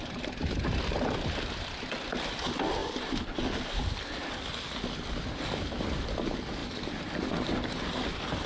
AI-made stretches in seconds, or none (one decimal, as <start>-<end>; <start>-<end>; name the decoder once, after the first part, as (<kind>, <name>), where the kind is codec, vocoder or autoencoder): 0.0-2.8 (vocoder, BigVGAN v2); 5.3-8.5